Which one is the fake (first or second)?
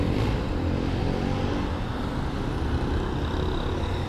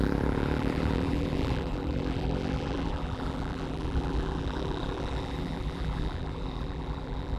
second